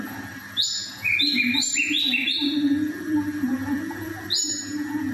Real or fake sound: fake